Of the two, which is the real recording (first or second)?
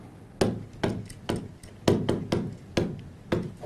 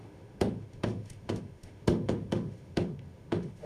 first